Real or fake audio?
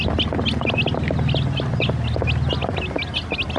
real